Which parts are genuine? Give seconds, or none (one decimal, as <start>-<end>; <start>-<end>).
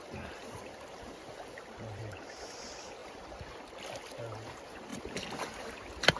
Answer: 0.0-0.4; 2.2-6.2